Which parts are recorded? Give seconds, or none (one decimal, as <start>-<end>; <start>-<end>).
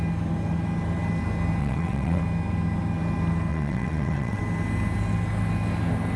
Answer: 0.0-1.6; 2.2-3.5; 4.4-6.2